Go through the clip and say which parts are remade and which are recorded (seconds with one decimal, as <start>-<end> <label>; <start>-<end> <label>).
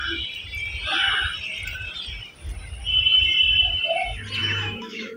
0.0-4.4 recorded; 4.4-5.2 remade